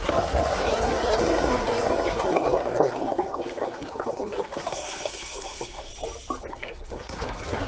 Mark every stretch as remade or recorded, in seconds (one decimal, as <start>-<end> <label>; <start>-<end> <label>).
0.0-5.9 remade; 5.9-6.5 recorded; 6.5-7.7 remade